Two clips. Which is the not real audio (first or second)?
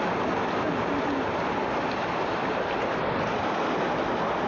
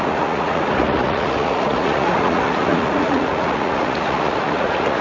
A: second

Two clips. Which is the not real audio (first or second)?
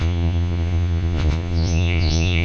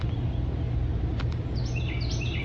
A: first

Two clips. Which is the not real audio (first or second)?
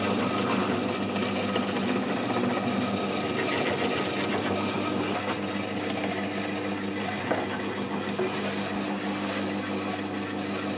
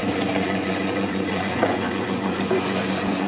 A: second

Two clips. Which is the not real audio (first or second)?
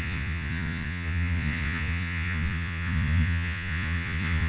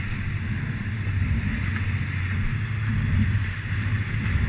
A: first